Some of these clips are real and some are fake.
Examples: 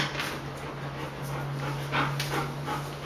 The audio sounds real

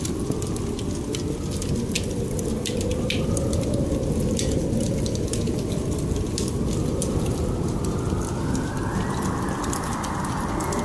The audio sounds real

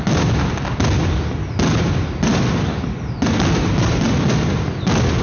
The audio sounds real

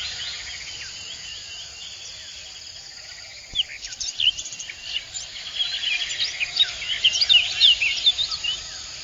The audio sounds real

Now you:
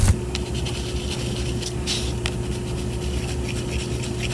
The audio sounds real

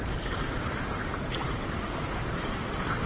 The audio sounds fake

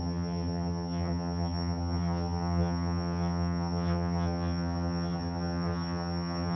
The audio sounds fake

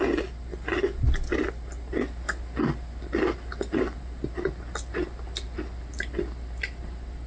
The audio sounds real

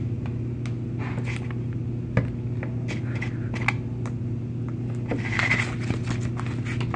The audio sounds real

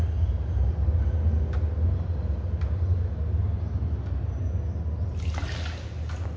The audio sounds real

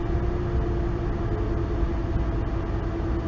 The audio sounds real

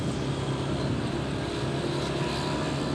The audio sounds real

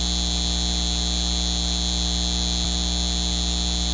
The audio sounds real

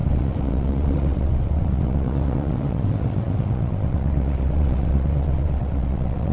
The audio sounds fake